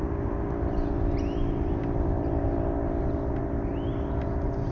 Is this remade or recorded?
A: recorded